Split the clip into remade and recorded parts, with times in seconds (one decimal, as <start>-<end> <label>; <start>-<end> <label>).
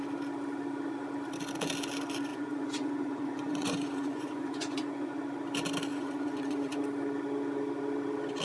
0.0-2.3 recorded; 2.3-5.2 remade; 5.2-5.9 recorded; 5.9-6.8 remade; 6.8-8.4 recorded